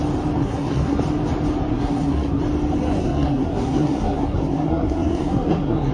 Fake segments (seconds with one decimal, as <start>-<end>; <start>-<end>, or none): 0.4-1.0; 1.7-2.4; 3.0-5.9